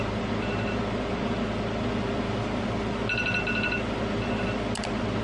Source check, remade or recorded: recorded